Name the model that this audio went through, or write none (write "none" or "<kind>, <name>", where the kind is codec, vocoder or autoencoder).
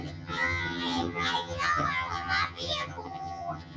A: vocoder, HiFi-GAN